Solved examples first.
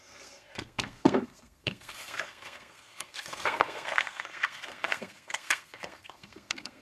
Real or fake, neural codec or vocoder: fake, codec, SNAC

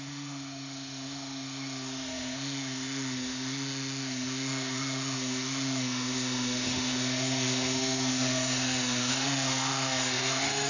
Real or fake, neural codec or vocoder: fake, autoencoder, DAC-VAE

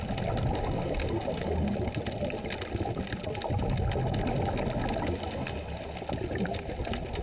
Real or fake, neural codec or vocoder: real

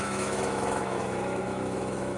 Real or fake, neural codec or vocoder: fake, autoencoder, DAC-VAE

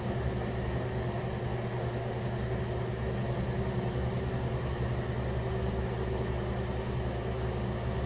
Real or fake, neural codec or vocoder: real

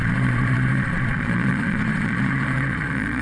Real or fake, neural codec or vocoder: fake, vocoder, Vocos